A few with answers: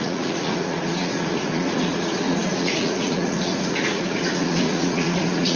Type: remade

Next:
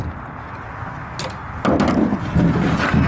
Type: recorded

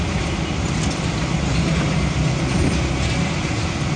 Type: recorded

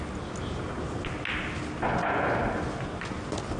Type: recorded